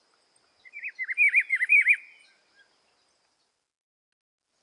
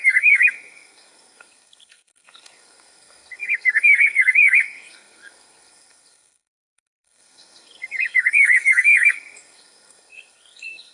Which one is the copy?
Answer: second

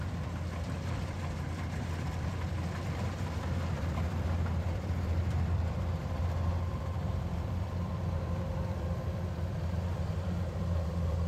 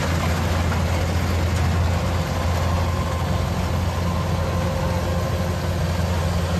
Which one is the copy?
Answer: first